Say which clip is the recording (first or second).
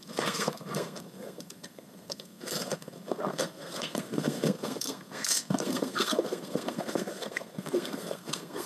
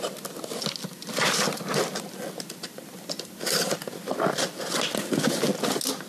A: second